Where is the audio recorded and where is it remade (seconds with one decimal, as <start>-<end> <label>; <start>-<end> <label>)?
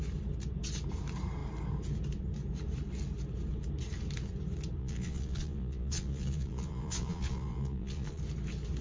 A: 0.0-4.8 recorded; 4.8-8.2 remade; 8.2-8.8 recorded